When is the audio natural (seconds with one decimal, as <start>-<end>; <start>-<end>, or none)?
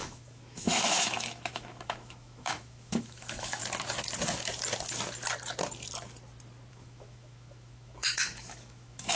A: 3.6-6.7